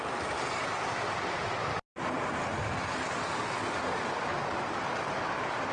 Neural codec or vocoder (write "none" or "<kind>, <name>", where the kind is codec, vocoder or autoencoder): none